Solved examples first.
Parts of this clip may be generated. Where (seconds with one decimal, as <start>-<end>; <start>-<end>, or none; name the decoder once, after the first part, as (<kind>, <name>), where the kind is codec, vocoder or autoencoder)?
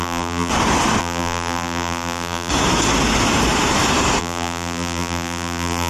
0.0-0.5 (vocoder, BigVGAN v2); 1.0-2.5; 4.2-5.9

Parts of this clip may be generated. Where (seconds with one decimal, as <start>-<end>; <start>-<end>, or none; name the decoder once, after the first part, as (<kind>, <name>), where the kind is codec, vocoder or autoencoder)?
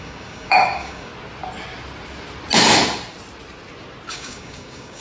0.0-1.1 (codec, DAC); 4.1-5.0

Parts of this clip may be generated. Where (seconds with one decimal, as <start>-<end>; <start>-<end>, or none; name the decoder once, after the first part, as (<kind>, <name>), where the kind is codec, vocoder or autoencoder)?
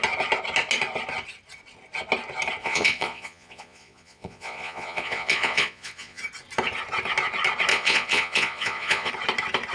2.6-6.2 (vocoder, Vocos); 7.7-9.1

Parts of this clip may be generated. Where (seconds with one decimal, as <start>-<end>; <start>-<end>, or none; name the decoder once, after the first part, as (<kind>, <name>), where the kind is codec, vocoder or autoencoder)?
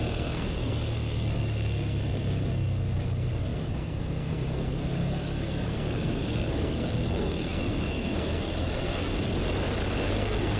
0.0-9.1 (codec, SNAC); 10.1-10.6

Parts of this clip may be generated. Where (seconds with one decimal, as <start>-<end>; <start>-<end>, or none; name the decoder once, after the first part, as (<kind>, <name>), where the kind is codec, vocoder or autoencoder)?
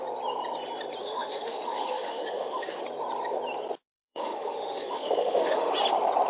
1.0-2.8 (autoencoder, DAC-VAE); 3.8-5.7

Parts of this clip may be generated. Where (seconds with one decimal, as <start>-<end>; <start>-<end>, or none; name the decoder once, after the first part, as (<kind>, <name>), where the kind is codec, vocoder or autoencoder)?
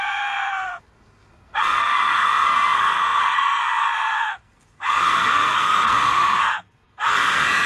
0.0-7.7 (codec, SNAC)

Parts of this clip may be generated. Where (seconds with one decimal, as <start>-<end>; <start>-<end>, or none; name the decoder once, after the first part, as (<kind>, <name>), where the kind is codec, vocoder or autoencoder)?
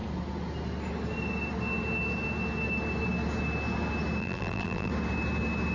4.2-4.9 (vocoder, BigVGAN v2)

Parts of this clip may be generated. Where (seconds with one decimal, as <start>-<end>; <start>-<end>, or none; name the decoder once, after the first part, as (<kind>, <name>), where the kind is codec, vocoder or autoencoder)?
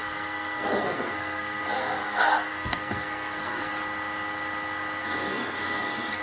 0.0-3.7 (codec, SNAC); 5.0-6.2